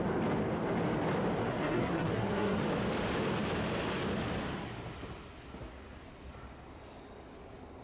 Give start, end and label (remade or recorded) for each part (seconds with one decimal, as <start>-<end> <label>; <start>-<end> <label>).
0.0-1.5 recorded; 1.5-2.6 remade; 2.6-7.8 recorded